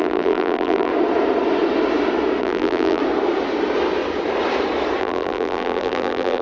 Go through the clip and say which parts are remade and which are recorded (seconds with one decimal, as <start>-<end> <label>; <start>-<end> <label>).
0.0-0.9 remade; 0.9-2.4 recorded; 2.4-3.0 remade; 3.0-5.0 recorded; 5.0-6.4 remade